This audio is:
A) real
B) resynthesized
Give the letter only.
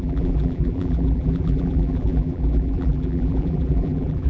B